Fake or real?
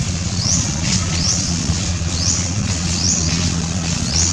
fake